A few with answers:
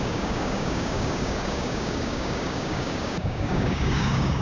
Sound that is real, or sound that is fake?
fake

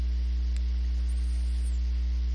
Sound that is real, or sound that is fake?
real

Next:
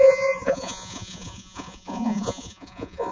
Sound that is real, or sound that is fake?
fake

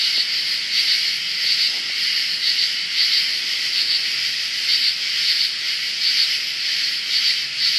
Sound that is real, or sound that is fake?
real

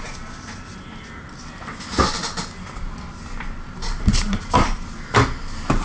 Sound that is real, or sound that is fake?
real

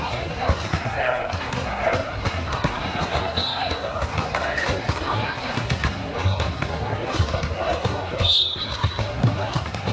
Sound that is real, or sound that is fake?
fake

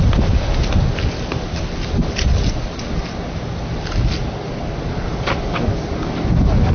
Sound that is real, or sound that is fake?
real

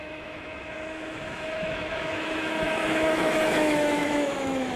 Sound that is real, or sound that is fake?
fake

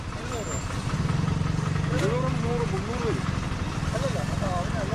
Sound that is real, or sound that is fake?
real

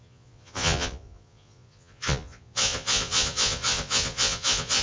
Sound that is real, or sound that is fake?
fake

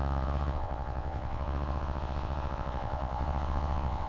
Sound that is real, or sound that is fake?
fake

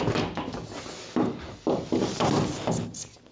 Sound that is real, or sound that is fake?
real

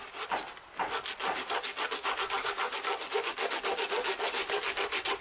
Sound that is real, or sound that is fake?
real